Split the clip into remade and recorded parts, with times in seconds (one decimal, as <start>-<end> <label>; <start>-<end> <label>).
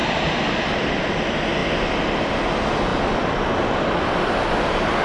0.0-5.0 recorded